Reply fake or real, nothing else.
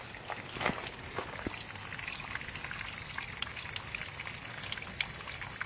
real